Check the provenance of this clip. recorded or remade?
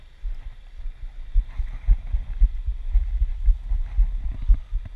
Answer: recorded